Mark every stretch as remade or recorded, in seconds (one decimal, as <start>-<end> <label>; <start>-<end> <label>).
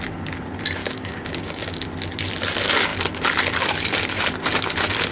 0.0-0.8 recorded; 0.8-1.8 remade; 1.8-5.1 recorded